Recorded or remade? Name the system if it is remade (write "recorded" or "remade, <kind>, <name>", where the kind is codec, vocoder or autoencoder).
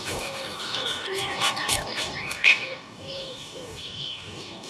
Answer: remade, codec, DAC